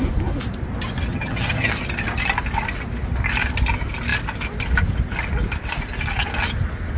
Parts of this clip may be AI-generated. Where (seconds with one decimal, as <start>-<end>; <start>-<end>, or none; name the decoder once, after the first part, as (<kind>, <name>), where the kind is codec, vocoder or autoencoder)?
1.1-1.7 (vocoder, HiFi-GAN)